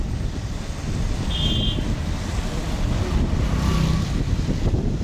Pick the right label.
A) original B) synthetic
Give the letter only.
A